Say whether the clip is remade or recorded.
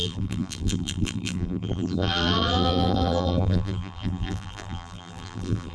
remade